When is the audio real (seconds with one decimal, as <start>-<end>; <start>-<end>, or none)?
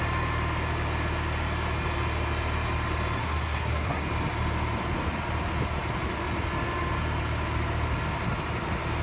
0.0-3.2; 4.1-9.0